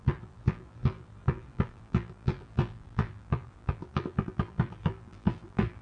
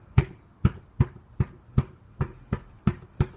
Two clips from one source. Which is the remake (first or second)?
first